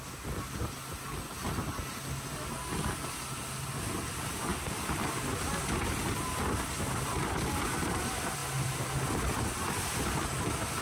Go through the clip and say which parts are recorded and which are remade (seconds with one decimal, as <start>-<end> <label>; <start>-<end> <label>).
0.0-10.8 recorded